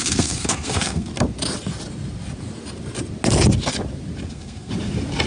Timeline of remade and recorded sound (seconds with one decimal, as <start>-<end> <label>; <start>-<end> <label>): 0.0-1.1 remade; 1.1-4.3 recorded; 4.3-4.7 remade; 4.7-5.3 recorded